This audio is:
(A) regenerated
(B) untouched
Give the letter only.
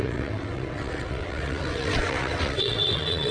A